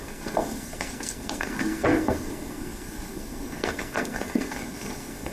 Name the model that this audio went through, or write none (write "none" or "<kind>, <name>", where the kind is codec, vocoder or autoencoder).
codec, SNAC